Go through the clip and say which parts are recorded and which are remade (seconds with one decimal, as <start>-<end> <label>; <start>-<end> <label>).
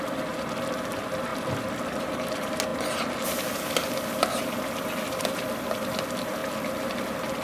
0.0-7.4 recorded